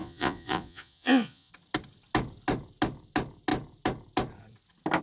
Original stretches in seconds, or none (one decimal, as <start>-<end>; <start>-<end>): 1.5-5.0